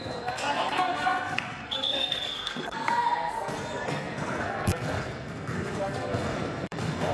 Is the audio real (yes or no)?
no